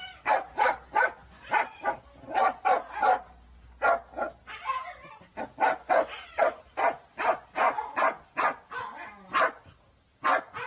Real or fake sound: real